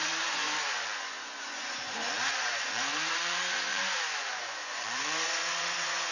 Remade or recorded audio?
remade